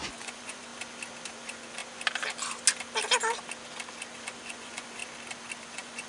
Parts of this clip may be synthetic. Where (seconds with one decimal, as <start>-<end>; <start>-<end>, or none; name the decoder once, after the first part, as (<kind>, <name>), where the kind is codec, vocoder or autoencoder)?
0.0-0.7 (vocoder, Vocos); 1.3-1.8; 4.2-5.0; 5.6-6.1

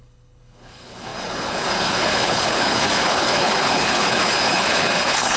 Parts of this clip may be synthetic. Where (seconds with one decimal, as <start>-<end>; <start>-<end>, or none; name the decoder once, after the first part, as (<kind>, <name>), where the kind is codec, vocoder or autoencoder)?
0.0-5.4 (codec, HILCodec)

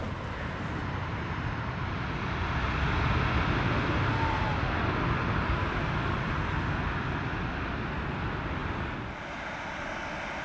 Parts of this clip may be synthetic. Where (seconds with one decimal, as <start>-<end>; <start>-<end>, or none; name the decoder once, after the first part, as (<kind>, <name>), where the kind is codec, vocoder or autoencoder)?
none